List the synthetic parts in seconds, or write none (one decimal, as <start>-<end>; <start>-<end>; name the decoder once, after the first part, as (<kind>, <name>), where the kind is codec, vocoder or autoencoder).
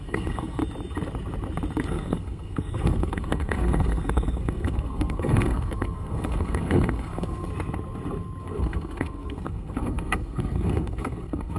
0.0-0.6 (codec, SNAC); 1.9-7.5; 8.4-11.6